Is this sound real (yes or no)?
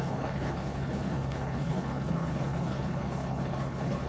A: no